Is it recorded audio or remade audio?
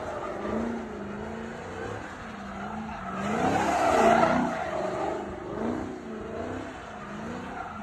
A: recorded